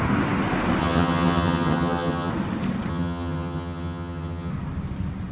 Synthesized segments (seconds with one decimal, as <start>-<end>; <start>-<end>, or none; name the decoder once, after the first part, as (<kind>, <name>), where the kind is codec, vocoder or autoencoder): 0.8-2.3 (vocoder, HiFi-GAN); 2.9-4.5